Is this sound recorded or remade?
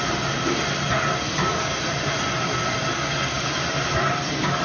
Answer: recorded